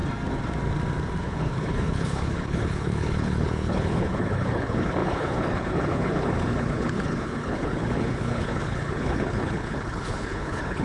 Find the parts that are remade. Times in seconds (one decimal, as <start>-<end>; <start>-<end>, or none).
1.2-10.8